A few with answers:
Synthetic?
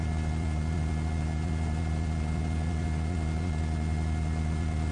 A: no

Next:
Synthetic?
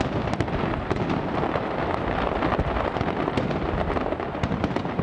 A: no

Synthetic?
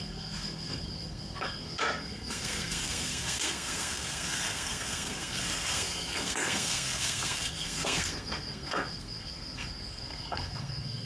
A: yes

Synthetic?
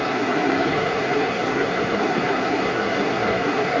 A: yes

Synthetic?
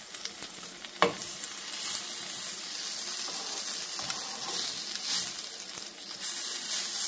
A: no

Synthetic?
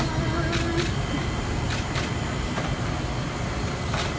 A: no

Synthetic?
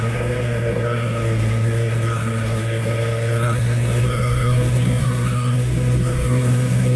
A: yes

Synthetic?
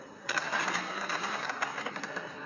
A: yes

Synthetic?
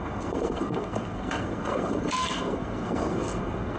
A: yes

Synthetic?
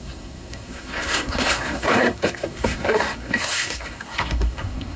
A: yes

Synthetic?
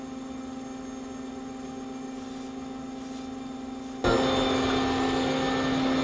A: no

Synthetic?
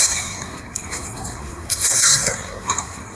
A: yes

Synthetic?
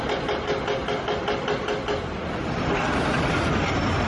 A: no